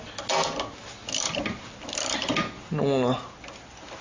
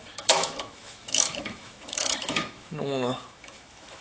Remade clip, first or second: second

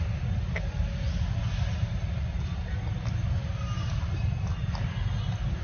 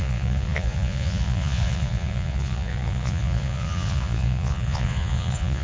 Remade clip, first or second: second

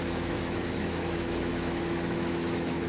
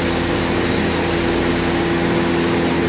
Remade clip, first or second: first